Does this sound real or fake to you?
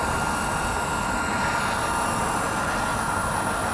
real